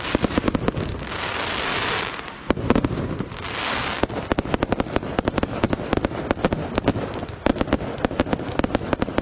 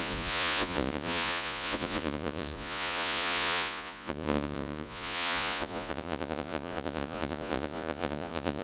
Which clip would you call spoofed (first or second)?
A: second